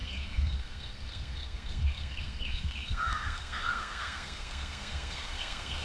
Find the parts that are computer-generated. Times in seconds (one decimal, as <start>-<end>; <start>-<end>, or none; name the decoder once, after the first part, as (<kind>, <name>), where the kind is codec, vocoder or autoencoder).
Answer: 0.0-5.8 (codec, SNAC)